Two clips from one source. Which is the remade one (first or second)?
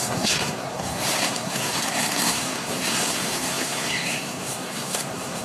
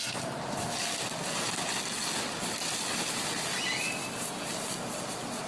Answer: first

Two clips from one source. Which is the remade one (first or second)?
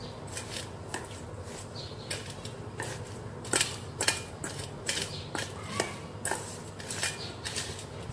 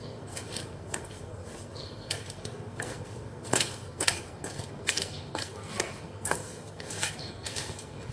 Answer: second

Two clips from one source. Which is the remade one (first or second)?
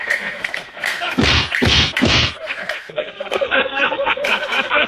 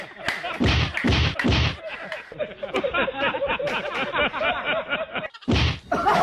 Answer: first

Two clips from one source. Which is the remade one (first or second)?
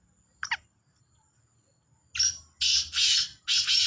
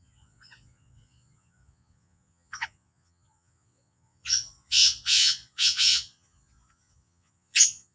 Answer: second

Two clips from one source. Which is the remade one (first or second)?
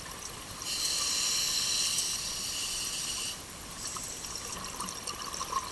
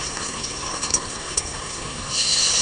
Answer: second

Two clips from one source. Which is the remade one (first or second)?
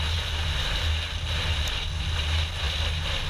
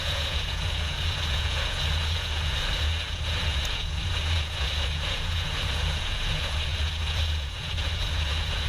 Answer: second